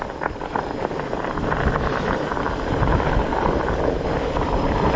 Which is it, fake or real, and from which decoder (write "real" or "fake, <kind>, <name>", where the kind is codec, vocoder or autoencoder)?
fake, vocoder, BigVGAN v2